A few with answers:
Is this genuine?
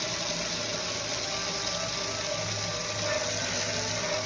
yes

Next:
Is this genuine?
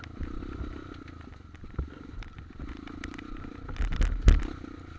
yes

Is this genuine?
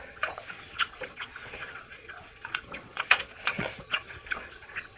no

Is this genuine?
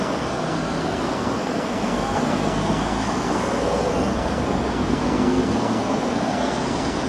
no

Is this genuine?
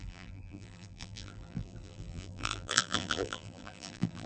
no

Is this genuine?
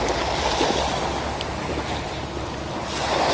yes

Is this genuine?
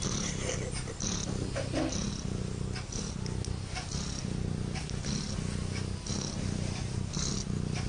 yes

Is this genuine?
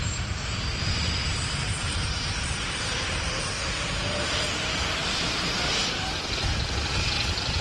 no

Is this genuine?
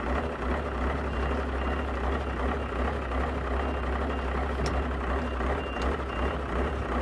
yes